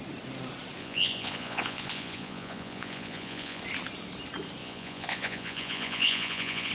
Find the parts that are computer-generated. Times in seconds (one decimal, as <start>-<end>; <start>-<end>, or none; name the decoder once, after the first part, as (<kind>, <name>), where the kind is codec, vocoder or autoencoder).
0.8-3.6 (vocoder, Vocos); 4.6-6.7